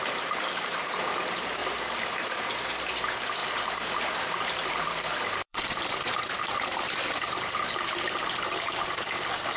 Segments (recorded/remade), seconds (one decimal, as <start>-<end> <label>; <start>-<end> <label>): 0.0-1.6 remade; 1.6-2.1 recorded; 2.1-9.6 remade